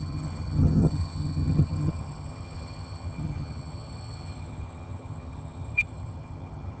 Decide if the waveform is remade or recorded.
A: remade